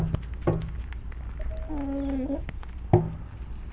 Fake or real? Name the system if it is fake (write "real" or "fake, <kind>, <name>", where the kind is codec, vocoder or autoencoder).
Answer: real